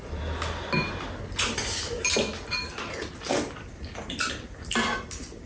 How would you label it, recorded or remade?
recorded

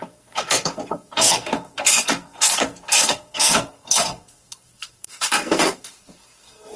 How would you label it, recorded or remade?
remade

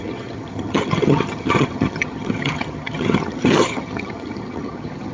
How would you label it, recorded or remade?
remade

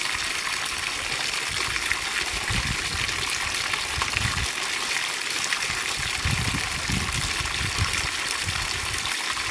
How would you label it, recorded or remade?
recorded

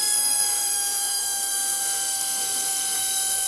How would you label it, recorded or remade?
remade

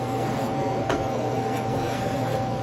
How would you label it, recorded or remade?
remade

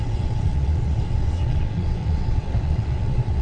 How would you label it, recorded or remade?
remade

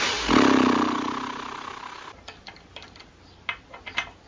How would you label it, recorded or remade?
recorded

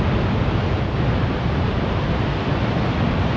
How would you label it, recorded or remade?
recorded